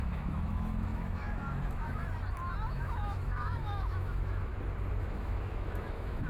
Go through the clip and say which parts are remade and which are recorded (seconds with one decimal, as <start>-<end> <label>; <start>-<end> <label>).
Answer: 0.0-2.0 remade; 2.0-2.7 recorded; 2.7-4.5 remade; 4.5-5.0 recorded; 5.0-6.3 remade